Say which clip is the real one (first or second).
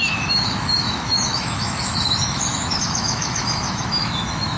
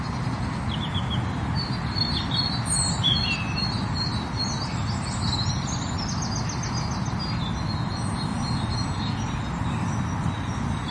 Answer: second